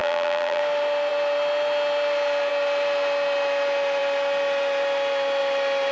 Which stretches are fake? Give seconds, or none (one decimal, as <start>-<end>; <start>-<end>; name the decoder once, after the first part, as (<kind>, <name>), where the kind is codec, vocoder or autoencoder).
0.0-0.6 (vocoder, BigVGAN v2)